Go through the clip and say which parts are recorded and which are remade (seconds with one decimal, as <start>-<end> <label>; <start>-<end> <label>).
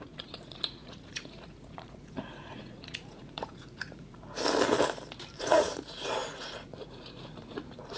0.0-4.2 remade; 4.2-5.4 recorded; 5.4-8.0 remade